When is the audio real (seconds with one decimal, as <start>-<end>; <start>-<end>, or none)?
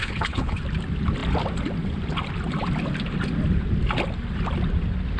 0.6-5.2